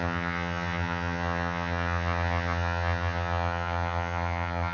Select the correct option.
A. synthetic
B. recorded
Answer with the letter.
A